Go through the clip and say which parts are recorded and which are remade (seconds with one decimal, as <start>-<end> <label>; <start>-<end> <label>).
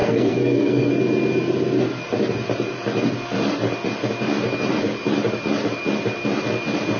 0.0-0.9 remade; 0.9-7.0 recorded